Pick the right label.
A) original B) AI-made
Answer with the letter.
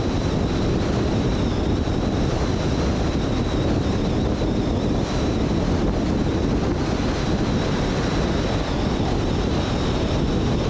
A